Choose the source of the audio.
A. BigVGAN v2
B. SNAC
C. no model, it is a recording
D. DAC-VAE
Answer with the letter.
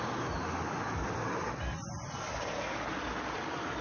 C